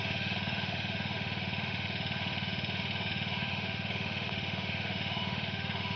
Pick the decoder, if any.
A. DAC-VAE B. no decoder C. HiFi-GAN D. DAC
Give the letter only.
A